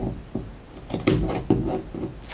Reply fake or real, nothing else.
real